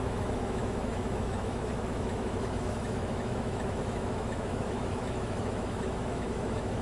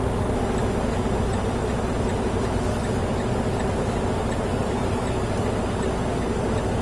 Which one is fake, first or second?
first